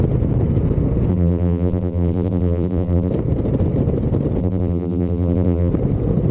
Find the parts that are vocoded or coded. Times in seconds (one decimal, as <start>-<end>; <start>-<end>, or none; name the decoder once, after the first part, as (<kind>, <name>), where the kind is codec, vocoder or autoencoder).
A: 1.1-3.1 (vocoder, BigVGAN v2); 4.4-5.7